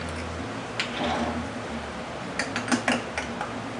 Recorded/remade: recorded